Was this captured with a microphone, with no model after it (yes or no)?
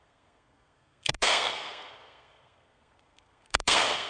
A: no